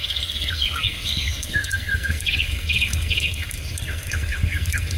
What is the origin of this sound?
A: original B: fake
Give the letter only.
B